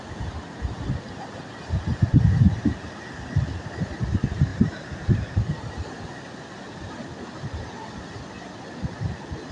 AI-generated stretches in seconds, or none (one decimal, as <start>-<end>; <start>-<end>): none